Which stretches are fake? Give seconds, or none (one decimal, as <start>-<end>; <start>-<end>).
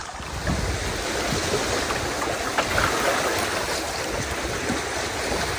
none